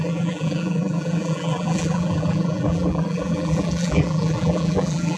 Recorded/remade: remade